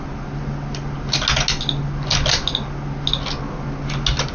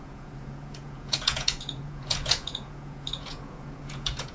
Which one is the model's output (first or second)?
second